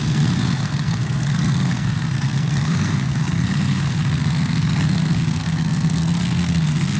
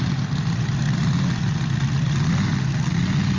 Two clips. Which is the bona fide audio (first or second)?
second